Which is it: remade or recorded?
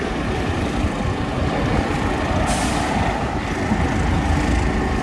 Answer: recorded